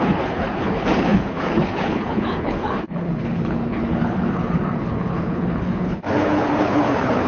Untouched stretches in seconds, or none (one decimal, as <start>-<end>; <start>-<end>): none